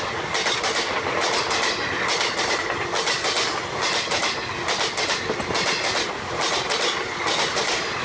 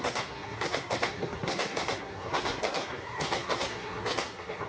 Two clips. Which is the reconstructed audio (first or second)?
second